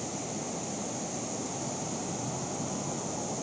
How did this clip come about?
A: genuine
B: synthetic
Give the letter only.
A